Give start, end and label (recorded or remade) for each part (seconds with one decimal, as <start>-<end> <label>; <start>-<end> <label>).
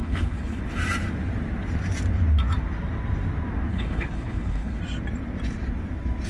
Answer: 0.0-0.6 remade; 0.6-3.7 recorded; 3.7-4.8 remade; 4.8-6.3 recorded